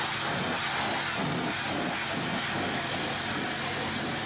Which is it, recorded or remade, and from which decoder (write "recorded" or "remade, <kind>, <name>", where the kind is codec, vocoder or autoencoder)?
recorded